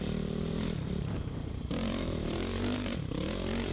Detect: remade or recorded remade